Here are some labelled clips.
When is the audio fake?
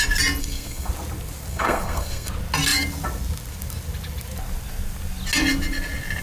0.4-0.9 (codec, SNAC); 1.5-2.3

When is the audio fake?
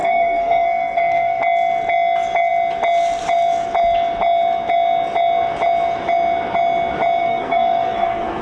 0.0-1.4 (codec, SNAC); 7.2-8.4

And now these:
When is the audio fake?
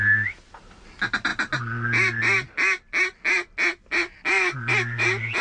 none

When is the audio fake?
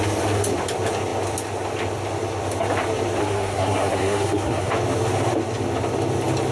3.2-4.7 (codec, SNAC)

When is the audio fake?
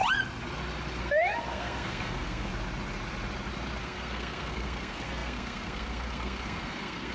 1.0-2.5 (codec, SNAC); 3.8-7.1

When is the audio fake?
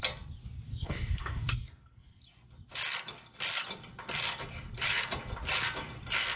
0.7-2.2 (codec, SNAC)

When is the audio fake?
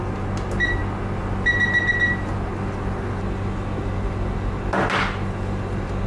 none